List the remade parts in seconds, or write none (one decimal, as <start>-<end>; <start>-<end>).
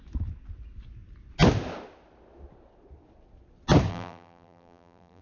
3.9-5.2